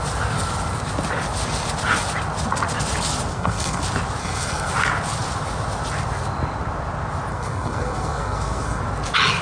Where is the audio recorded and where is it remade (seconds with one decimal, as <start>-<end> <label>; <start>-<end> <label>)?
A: 0.0-3.3 recorded; 3.3-3.8 remade; 3.8-4.2 recorded; 4.2-4.7 remade; 4.7-7.3 recorded; 7.3-8.8 remade; 8.8-9.4 recorded